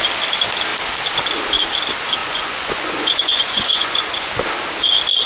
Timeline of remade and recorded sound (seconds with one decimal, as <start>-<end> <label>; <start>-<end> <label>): 0.0-2.2 recorded; 2.2-4.3 remade; 4.3-5.3 recorded